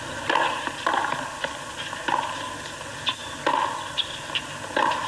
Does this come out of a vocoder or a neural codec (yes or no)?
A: no